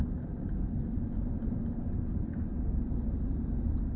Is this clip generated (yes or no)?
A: no